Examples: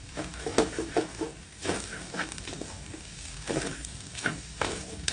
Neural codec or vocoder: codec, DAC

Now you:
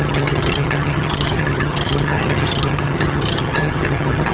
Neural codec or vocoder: vocoder, HiFi-GAN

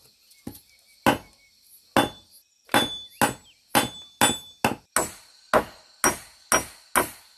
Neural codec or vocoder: none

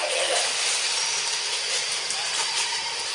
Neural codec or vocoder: none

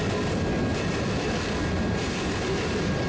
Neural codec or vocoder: none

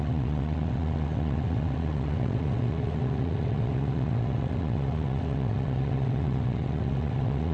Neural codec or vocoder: vocoder, WaveNeXt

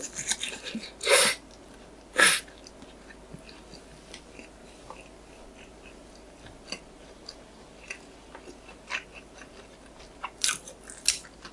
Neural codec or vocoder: none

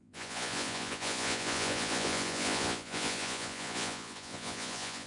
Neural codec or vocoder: vocoder, Vocos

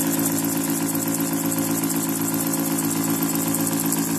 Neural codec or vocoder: none